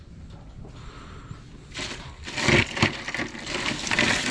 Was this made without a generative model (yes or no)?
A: yes